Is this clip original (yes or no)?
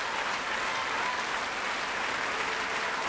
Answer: yes